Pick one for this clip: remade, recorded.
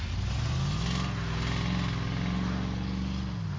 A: recorded